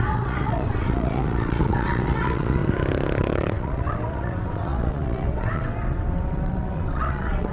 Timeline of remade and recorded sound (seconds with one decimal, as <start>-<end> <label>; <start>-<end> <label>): 0.0-2.6 remade; 2.6-3.2 recorded; 3.2-7.5 remade